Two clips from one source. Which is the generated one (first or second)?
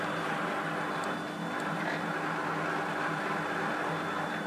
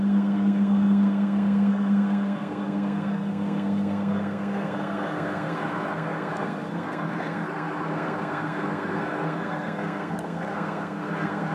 second